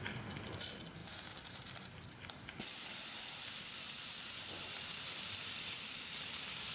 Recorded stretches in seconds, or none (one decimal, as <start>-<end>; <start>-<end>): 0.0-1.0; 2.6-6.7